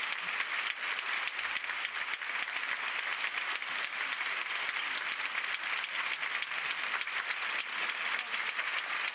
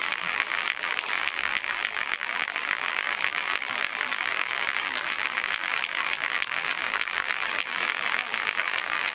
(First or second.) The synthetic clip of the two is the second